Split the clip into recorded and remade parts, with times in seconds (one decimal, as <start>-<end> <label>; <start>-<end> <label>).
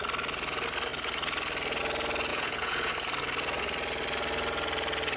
0.0-2.3 recorded; 2.3-2.9 remade; 2.9-5.2 recorded